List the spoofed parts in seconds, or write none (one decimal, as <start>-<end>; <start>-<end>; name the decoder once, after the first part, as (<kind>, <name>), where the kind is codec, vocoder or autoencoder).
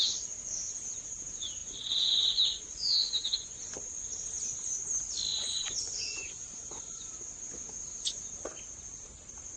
1.6-3.6 (vocoder, Vocos); 5.3-7.1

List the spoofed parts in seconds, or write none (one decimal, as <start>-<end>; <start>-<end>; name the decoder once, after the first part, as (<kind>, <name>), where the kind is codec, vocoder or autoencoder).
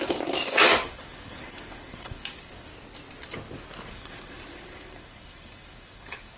0.0-2.7 (codec, DAC); 3.9-6.4